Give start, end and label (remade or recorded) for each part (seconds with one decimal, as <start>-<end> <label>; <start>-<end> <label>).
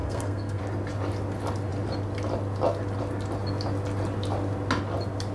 0.0-0.6 remade; 0.6-5.3 recorded